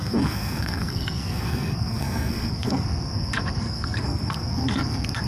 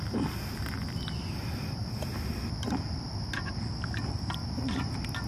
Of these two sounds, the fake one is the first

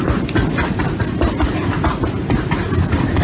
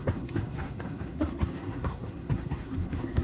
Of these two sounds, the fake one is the second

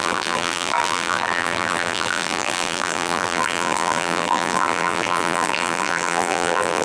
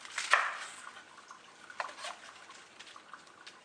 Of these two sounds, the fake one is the first